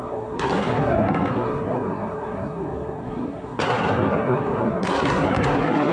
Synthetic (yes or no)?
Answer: yes